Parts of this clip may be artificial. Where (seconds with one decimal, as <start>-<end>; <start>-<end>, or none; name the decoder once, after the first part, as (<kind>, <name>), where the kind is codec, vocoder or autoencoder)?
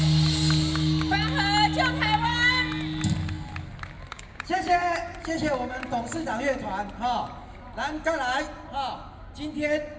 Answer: 4.1-4.6 (codec, DAC)